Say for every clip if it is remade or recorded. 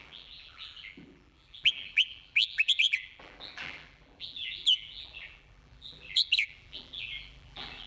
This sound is remade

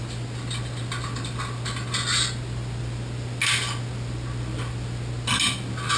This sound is recorded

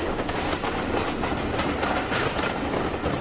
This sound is recorded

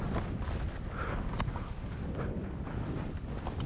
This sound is recorded